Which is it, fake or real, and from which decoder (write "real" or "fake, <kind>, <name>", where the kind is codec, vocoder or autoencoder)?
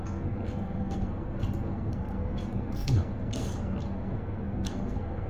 fake, codec, SNAC